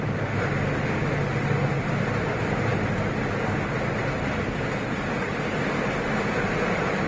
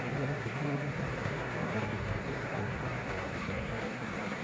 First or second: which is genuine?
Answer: first